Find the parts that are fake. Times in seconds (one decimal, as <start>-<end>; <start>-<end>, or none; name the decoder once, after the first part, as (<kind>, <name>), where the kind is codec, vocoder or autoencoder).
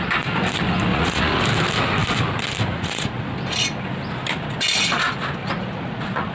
0.9-1.4 (vocoder, Vocos); 2.7-3.3; 5.4-6.3